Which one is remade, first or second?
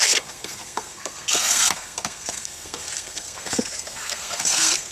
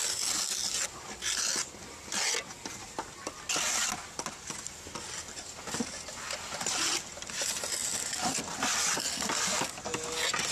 first